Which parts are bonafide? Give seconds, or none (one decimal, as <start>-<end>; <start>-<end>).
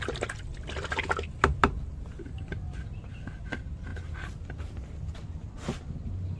0.0-6.4